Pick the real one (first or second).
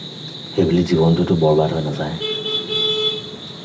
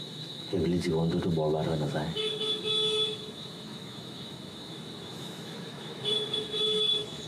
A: first